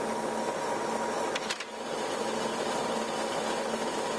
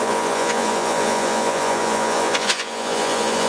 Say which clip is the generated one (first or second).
second